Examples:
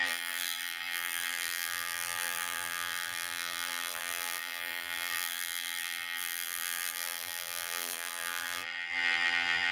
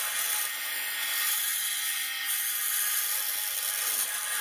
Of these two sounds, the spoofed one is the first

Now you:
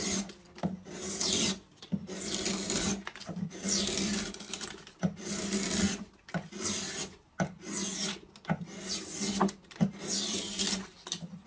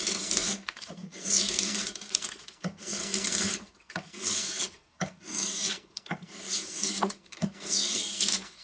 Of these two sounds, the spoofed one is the second